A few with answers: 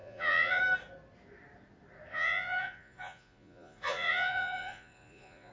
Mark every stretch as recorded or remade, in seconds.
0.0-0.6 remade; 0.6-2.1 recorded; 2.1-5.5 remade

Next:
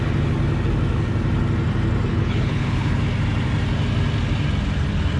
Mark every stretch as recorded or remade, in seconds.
0.0-2.1 recorded; 2.1-3.0 remade; 3.0-5.2 recorded

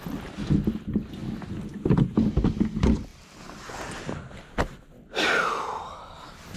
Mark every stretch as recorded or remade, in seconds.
0.0-6.6 recorded

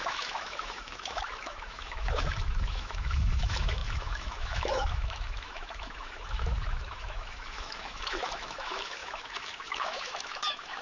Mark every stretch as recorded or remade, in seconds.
0.0-10.8 remade

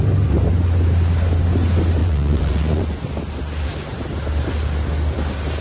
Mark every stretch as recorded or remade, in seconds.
0.0-2.0 recorded; 2.0-3.1 remade; 3.1-5.6 recorded

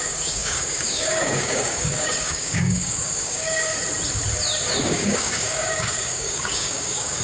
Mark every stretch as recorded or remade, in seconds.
0.0-3.7 remade; 3.7-4.8 recorded; 4.8-7.2 remade

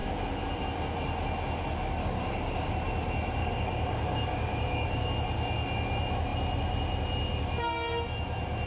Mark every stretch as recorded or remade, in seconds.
0.0-2.0 recorded; 2.0-2.7 remade; 2.7-3.4 recorded; 3.4-5.1 remade; 5.1-8.7 recorded

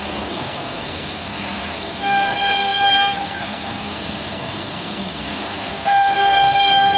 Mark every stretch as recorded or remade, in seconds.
0.0-7.0 remade